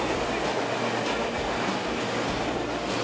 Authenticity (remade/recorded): recorded